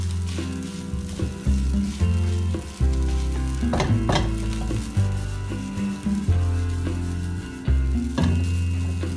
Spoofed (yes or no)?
no